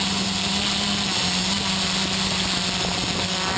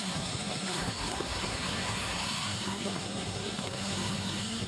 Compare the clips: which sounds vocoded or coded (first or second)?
second